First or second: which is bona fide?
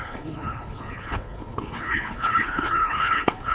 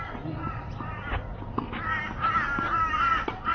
second